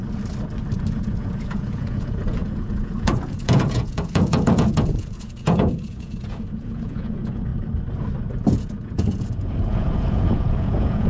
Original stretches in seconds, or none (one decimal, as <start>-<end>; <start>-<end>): 0.0-1.0; 7.5-8.5